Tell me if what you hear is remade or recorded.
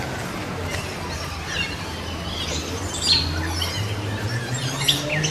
recorded